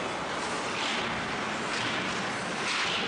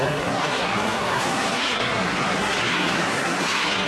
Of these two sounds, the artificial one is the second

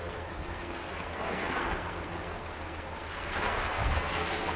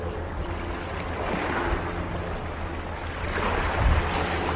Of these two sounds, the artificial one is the first